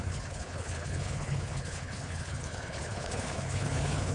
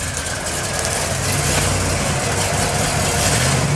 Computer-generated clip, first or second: first